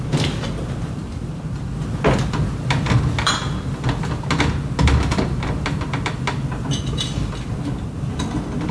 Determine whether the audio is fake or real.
real